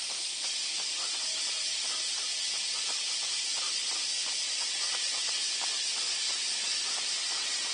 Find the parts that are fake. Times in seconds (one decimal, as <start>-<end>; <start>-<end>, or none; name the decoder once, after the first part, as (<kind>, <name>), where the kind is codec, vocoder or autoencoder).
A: none